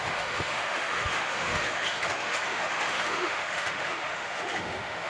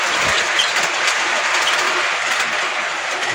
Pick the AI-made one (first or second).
first